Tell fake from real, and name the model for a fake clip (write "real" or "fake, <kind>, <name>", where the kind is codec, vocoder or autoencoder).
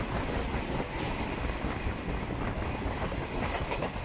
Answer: fake, vocoder, BigVGAN v2